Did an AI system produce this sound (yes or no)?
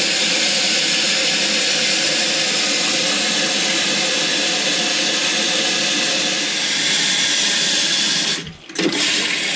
no